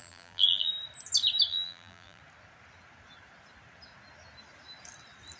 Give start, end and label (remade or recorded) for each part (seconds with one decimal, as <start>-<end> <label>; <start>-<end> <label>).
0.0-0.7 remade; 0.7-1.5 recorded; 1.5-2.2 remade; 2.2-5.4 recorded